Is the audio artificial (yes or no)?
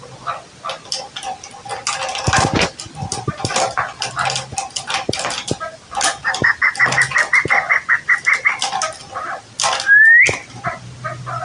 no